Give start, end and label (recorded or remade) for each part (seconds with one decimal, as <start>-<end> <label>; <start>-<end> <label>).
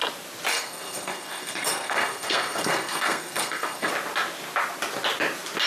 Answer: 0.0-0.5 recorded; 0.5-3.9 remade; 3.9-5.7 recorded